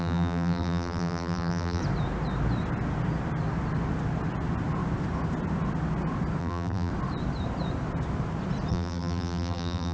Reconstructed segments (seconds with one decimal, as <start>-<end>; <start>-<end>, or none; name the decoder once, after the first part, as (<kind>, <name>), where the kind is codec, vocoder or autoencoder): 0.0-1.8 (vocoder, BigVGAN v2); 6.4-6.9; 8.7-9.9